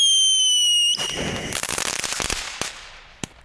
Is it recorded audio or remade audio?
recorded